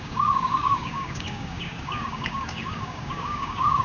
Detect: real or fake fake